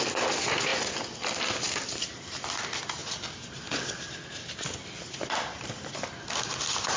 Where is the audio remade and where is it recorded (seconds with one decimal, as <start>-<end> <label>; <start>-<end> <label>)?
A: 0.0-7.0 recorded